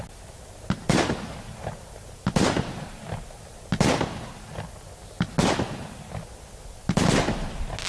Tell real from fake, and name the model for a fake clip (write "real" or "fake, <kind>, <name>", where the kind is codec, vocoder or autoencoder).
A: real